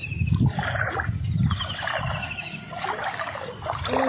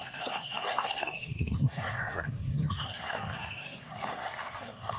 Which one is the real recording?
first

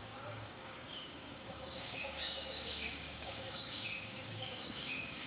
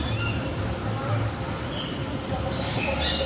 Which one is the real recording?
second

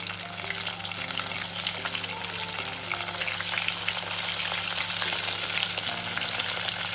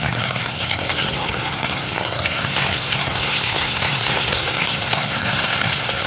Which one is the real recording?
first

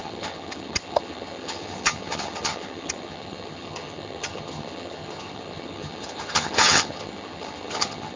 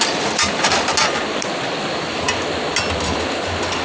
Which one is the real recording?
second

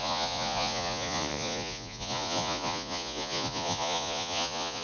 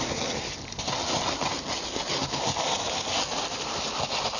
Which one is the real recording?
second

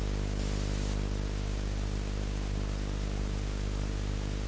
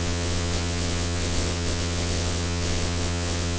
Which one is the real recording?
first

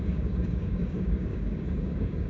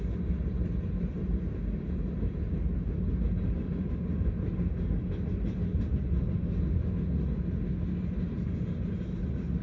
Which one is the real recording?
second